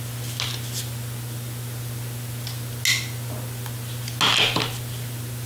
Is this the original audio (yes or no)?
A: yes